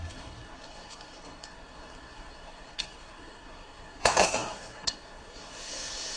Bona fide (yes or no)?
no